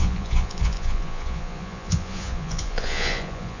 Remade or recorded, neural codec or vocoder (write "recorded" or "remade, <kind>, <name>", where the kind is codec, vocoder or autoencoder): remade, vocoder, Vocos